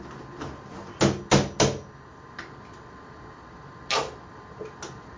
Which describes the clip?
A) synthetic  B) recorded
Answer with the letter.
B